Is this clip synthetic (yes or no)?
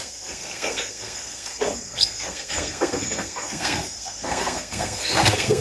yes